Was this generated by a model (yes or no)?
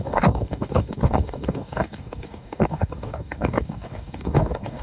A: yes